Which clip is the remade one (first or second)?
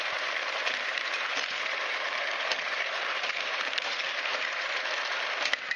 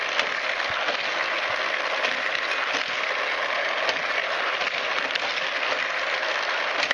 first